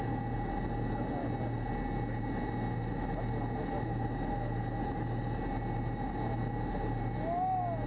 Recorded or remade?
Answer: recorded